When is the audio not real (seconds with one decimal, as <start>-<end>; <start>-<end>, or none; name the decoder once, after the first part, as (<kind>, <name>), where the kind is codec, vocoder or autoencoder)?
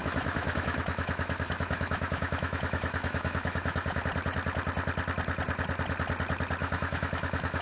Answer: 0.0-4.0 (autoencoder, DAC-VAE); 6.6-7.6